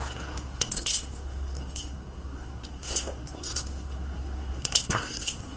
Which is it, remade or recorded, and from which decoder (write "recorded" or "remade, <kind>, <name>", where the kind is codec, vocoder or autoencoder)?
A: remade, codec, SNAC